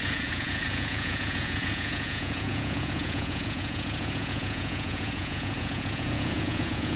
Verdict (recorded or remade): remade